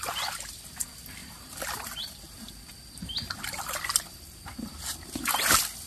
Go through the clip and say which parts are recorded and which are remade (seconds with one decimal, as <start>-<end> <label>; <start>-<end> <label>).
0.0-1.2 recorded; 1.2-4.7 remade; 4.7-5.9 recorded